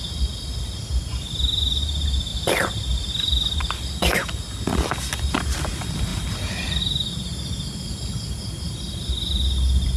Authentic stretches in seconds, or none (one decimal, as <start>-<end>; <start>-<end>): 0.0-2.3; 3.1-6.1; 6.8-10.0

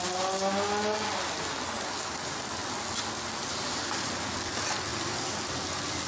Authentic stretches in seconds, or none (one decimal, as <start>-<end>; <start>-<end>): 0.0-6.1